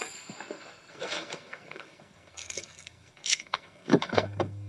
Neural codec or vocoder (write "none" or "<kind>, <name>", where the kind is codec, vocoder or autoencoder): codec, SNAC